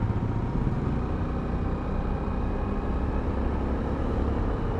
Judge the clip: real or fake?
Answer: real